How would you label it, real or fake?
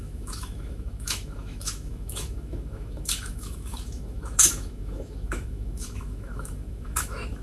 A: fake